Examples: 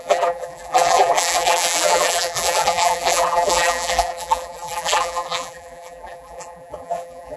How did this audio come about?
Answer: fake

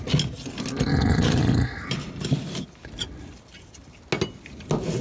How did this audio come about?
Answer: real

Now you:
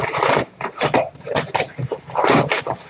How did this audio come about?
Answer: fake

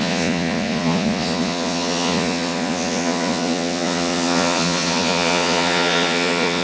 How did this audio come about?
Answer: fake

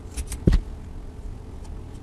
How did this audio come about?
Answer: real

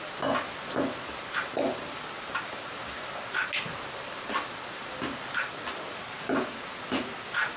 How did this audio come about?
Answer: real